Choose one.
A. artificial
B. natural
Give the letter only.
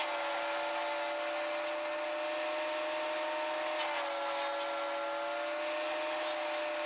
B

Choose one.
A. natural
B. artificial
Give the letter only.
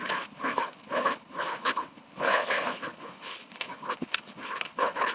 B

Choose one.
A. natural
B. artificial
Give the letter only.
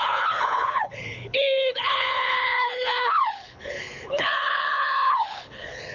B